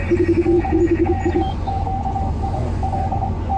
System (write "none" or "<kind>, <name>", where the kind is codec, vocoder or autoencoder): vocoder, Vocos